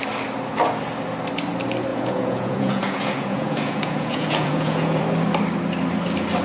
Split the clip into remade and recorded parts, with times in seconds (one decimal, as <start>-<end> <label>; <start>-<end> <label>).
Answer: 0.0-1.9 recorded; 1.9-5.0 remade; 5.0-6.4 recorded